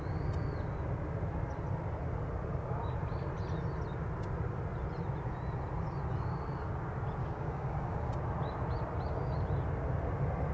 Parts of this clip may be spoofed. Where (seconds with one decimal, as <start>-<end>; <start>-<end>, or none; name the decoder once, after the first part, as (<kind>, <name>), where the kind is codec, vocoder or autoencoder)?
7.2-8.1 (codec, DAC)